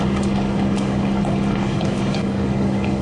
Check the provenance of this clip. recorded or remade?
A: remade